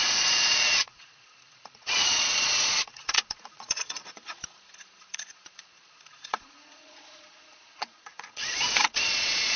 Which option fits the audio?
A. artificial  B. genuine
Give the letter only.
A